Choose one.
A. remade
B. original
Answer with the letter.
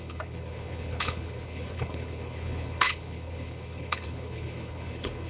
A